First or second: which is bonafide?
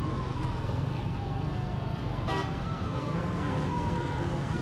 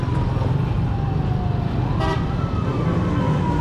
second